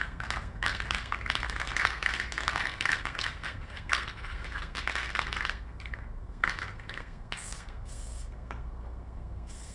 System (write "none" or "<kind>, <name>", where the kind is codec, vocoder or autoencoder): codec, SNAC